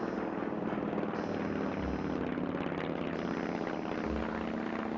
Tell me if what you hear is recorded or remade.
recorded